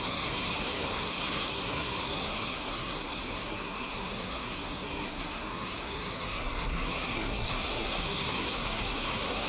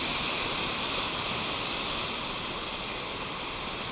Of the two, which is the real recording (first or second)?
second